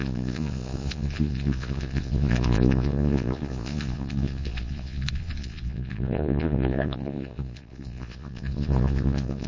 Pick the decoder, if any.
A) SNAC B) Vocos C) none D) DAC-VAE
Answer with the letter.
B